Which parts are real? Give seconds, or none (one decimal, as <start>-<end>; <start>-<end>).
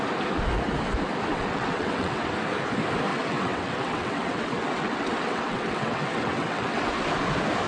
0.0-1.3; 2.3-3.1; 6.9-7.7